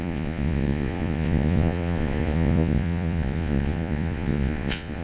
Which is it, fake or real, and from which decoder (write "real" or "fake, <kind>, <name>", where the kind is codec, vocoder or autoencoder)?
fake, vocoder, Vocos